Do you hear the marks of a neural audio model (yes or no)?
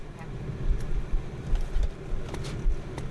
no